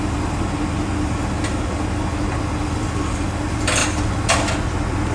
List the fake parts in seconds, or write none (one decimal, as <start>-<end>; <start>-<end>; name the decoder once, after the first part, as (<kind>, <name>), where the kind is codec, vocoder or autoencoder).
none